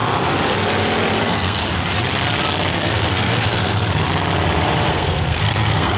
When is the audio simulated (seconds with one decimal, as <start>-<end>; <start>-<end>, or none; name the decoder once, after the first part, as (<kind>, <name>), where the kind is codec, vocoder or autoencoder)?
1.2-1.6 (codec, SNAC); 2.7-4.0; 4.9-6.0